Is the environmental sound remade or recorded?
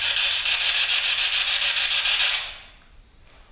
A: recorded